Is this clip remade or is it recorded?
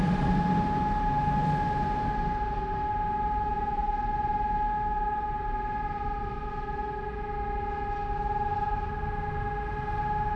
recorded